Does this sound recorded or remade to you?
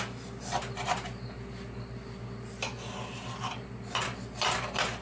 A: recorded